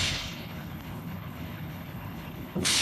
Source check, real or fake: fake